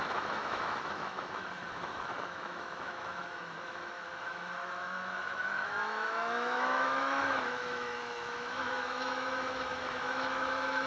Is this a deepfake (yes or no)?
yes